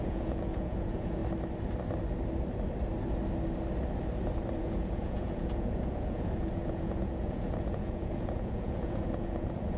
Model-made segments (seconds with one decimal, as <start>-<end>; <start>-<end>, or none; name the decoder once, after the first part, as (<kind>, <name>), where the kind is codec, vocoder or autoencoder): 0.0-1.2 (vocoder, Vocos); 4.6-9.8